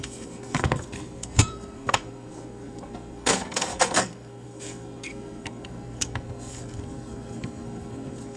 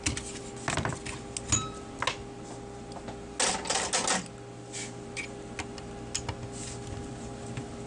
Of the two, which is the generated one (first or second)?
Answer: first